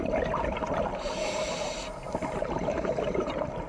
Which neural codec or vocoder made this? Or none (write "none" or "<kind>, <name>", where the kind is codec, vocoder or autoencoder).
vocoder, BigVGAN v2